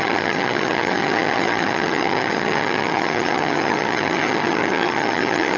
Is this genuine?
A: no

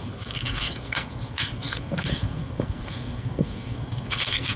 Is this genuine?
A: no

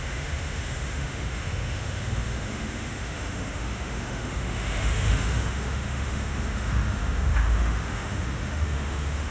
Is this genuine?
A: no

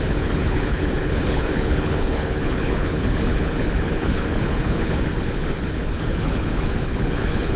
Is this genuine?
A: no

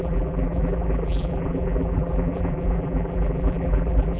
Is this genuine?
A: no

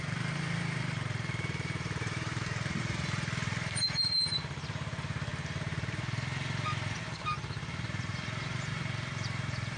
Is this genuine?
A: no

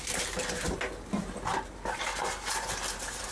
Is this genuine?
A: no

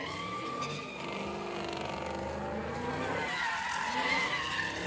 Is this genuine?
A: yes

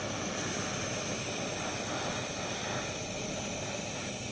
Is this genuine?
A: yes